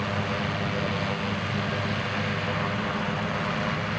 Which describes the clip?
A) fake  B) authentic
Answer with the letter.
B